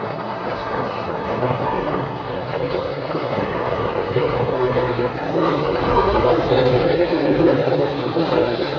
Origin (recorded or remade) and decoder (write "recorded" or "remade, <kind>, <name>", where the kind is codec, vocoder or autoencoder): remade, codec, SNAC